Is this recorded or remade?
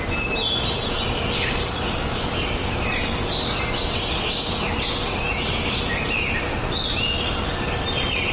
recorded